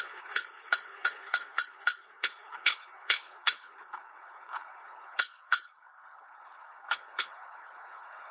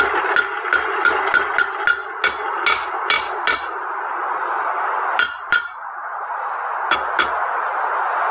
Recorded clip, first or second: second